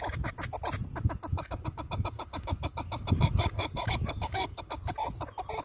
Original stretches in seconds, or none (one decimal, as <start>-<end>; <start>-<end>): 0.0-1.3; 4.7-5.6